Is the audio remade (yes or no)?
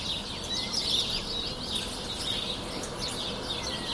no